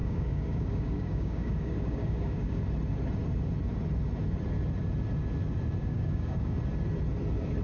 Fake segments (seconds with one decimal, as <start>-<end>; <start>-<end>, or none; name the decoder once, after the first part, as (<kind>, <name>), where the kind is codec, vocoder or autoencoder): 0.0-2.6 (codec, DAC); 5.8-6.6